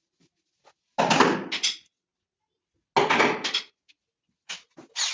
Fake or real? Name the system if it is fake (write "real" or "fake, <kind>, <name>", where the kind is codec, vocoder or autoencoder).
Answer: real